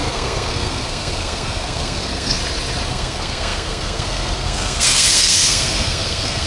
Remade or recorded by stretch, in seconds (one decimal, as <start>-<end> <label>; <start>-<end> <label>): 0.0-2.4 remade; 2.4-2.9 recorded; 2.9-6.5 remade